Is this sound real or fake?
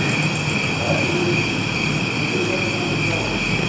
real